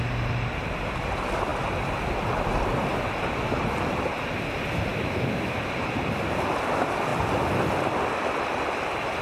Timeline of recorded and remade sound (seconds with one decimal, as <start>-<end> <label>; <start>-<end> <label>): 0.0-4.9 recorded; 4.9-5.6 remade; 5.6-9.2 recorded